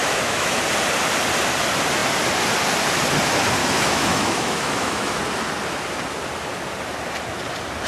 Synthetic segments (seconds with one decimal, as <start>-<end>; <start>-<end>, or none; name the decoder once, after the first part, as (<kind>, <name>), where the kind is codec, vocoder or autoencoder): 0.0-0.6 (autoencoder, DAC-VAE); 3.6-5.2